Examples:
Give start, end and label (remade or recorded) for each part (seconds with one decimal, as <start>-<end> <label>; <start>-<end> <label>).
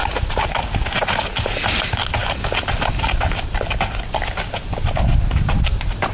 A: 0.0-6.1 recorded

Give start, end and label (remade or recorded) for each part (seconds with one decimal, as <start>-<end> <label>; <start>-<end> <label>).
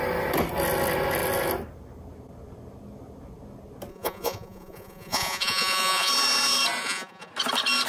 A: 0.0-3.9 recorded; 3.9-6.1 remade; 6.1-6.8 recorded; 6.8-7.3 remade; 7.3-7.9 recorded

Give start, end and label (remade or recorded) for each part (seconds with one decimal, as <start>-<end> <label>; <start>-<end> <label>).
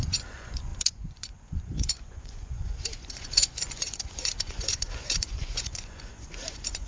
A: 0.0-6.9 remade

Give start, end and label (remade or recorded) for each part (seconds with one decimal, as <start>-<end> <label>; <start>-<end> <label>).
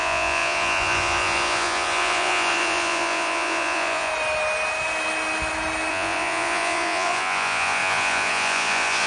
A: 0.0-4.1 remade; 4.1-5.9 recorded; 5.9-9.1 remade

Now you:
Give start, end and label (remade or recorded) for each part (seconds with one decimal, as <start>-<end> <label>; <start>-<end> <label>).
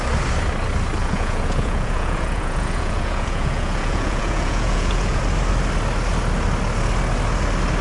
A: 0.0-1.0 recorded; 1.0-5.2 remade; 5.2-7.8 recorded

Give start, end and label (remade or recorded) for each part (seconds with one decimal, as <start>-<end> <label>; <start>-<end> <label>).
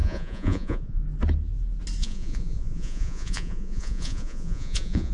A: 0.0-1.0 remade; 1.0-2.0 recorded; 2.0-5.1 remade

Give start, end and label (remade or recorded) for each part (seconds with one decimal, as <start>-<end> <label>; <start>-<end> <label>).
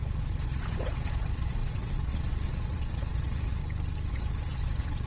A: 0.0-3.6 remade; 3.6-4.1 recorded; 4.1-5.1 remade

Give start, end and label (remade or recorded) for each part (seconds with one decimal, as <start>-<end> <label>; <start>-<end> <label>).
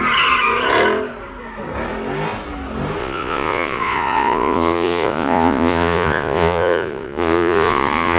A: 0.0-3.0 recorded; 3.0-8.2 remade